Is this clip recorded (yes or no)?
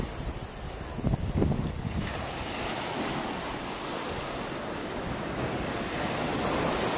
yes